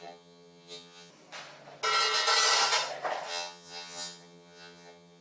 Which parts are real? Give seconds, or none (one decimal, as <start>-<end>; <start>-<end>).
1.1-3.3